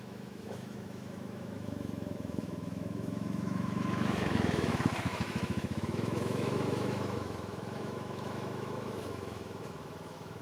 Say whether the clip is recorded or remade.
remade